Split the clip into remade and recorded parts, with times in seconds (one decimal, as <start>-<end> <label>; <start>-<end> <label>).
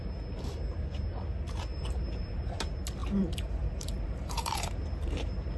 0.0-1.7 recorded; 1.7-2.6 remade; 2.6-3.0 recorded; 3.0-5.6 remade